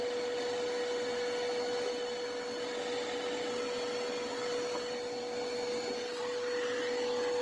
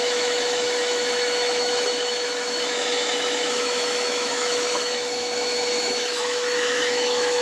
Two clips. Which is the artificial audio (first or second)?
second